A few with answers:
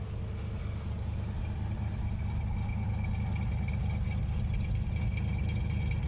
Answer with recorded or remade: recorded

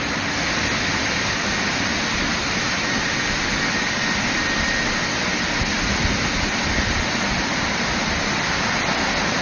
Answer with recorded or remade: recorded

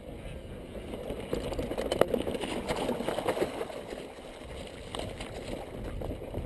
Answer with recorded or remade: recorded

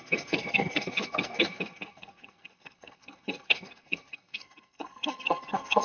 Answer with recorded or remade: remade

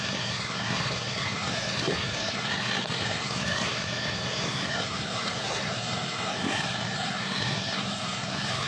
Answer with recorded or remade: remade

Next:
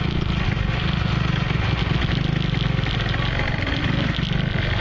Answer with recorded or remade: recorded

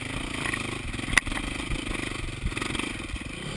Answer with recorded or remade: recorded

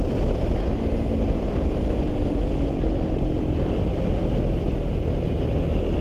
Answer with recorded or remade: recorded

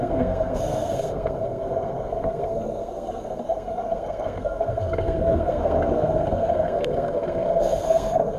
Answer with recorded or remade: remade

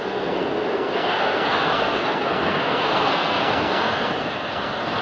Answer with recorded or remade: remade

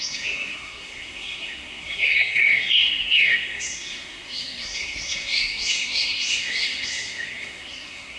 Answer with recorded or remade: remade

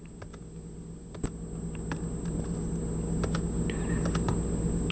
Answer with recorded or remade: recorded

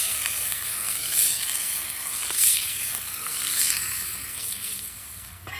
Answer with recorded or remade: remade